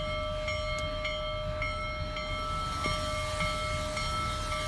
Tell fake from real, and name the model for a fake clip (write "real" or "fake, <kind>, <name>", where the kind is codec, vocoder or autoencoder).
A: real